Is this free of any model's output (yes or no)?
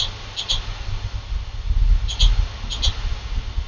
yes